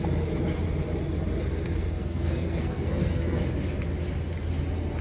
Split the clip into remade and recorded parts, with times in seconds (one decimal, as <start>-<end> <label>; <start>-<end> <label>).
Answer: 0.0-1.5 recorded; 1.5-3.4 remade; 3.4-5.0 recorded